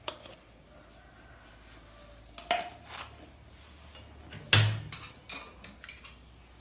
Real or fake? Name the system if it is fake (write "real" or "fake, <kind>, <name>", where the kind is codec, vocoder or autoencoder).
real